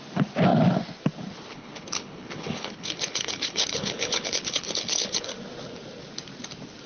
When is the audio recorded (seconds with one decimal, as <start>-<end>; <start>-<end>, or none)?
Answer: 0.0-1.5; 5.3-6.9